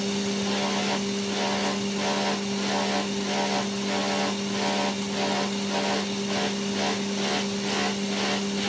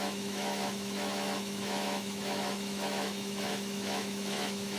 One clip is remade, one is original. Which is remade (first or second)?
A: second